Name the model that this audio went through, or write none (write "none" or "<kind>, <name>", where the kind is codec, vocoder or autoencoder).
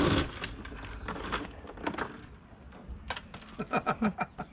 none